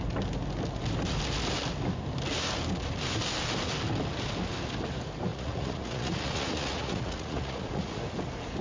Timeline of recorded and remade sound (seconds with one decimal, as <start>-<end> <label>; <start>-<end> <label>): 0.0-5.3 recorded; 5.3-8.0 remade; 8.0-8.6 recorded